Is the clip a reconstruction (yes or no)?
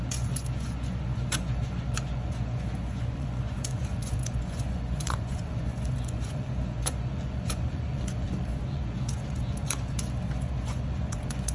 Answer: yes